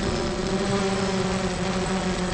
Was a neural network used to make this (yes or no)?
yes